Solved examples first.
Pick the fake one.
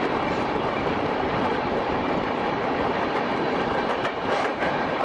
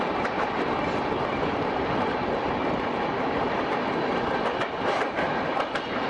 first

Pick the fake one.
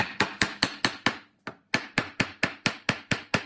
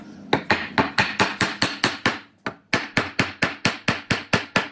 first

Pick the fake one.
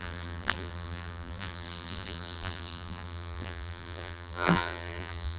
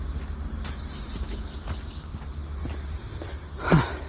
first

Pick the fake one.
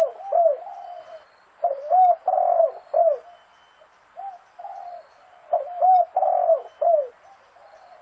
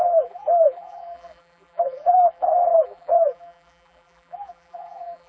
second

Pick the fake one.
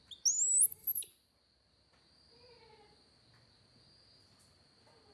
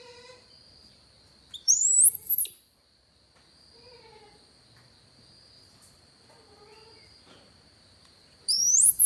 second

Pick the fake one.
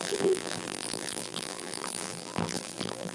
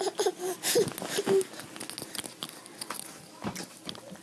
first